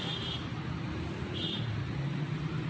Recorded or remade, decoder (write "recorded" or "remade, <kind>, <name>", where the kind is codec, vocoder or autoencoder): recorded